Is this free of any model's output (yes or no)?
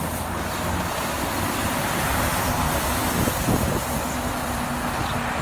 yes